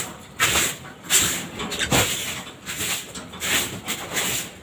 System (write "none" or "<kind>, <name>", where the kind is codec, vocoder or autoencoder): none